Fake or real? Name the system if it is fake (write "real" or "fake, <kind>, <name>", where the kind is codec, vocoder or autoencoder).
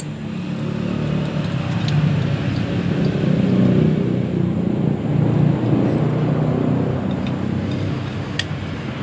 real